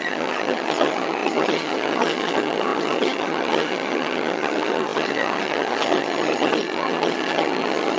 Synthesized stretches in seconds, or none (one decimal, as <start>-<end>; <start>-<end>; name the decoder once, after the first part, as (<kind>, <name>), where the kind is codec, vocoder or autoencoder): 0.0-8.0 (vocoder, HiFi-GAN)